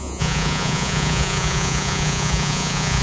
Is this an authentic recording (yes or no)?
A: no